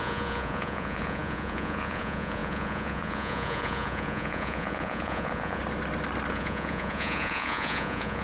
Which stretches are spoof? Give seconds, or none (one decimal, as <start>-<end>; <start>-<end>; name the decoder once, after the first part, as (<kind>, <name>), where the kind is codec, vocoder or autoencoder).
0.0-5.6 (vocoder, Vocos); 6.3-8.2